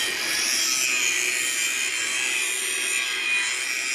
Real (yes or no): yes